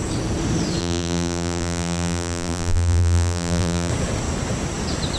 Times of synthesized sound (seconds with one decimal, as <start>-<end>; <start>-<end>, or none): 0.8-3.9